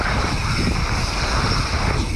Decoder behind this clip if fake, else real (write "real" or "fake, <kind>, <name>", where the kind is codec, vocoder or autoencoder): real